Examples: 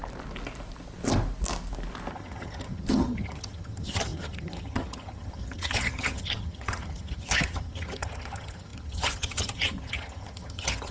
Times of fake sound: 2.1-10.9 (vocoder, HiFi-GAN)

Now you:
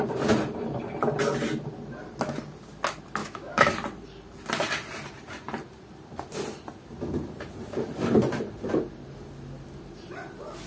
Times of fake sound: 3.2-3.7 (autoencoder, DAC-VAE)

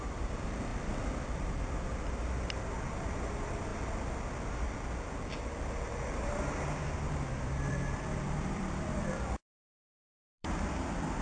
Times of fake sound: 0.0-3.7 (vocoder, BigVGAN v2); 5.9-11.2

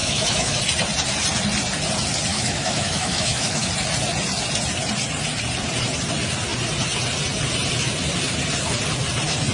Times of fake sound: 0.0-0.6 (autoencoder, DAC-VAE); 2.3-3.7